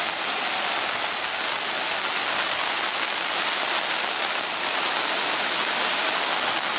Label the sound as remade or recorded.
recorded